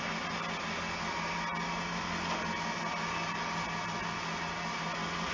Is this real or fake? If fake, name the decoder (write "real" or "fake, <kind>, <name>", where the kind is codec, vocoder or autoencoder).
real